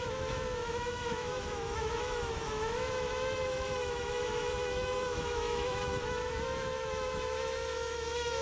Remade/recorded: remade